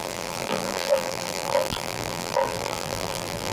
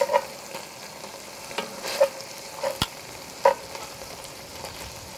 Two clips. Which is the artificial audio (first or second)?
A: first